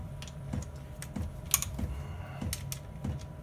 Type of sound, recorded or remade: recorded